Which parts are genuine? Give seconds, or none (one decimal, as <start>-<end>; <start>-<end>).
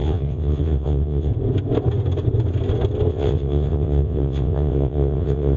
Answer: 1.3-3.1